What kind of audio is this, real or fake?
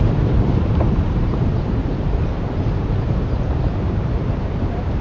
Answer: fake